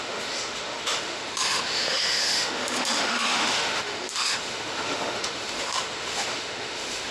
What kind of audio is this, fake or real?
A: fake